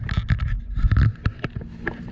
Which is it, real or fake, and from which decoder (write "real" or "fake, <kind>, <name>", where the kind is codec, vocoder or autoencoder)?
real